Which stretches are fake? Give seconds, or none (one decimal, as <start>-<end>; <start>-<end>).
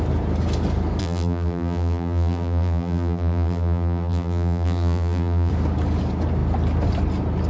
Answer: 1.0-5.5